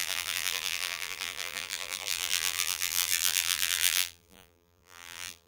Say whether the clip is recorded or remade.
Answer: remade